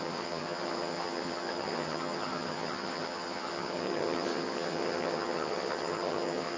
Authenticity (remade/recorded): remade